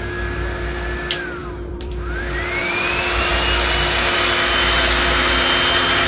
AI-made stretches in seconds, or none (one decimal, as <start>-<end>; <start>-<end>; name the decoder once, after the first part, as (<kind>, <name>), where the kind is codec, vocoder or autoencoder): 1.4-2.2 (vocoder, BigVGAN v2); 2.6-3.3